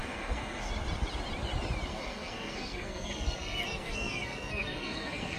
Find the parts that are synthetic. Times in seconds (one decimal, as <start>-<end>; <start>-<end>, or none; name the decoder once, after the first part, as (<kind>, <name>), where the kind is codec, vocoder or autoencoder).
0.0-0.7 (codec, SNAC); 1.9-5.4